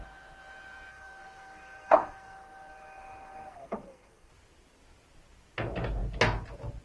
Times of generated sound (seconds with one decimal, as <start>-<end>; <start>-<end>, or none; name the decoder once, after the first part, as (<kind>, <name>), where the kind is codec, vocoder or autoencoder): 0.9-4.3 (codec, SNAC)